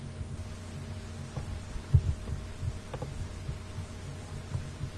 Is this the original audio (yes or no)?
yes